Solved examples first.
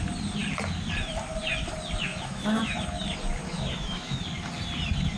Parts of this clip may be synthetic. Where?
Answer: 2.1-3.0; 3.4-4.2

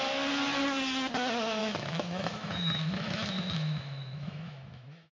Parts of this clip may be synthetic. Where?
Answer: 1.6-5.1

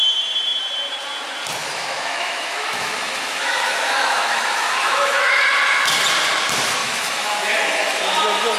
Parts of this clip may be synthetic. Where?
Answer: 1.6-5.4; 6.8-8.0